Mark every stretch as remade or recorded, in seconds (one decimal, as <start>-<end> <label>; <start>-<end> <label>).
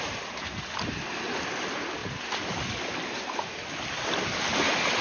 0.0-5.0 recorded